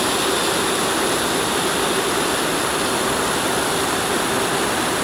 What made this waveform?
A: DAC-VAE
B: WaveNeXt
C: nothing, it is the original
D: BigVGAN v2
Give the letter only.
C